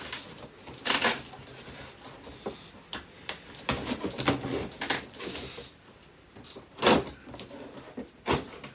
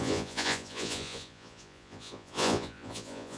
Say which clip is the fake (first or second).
second